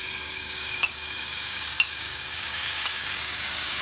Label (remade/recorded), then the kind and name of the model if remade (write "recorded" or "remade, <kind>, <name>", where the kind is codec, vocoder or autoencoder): remade, codec, DAC